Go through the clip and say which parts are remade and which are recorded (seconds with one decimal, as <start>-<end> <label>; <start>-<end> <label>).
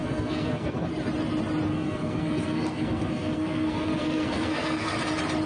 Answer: 0.0-0.9 remade; 0.9-1.7 recorded; 1.7-5.0 remade; 5.0-5.5 recorded